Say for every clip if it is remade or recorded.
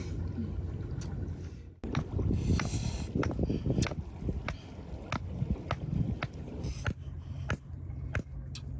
recorded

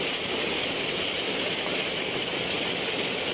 recorded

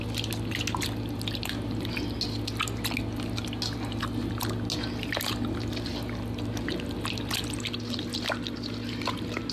recorded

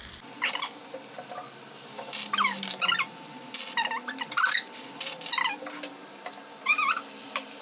recorded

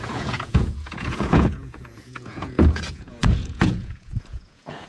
remade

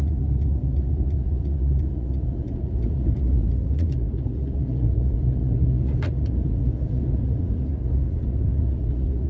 remade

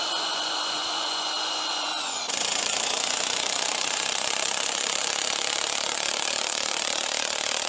remade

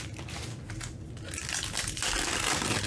recorded